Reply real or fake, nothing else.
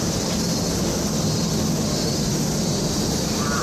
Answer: real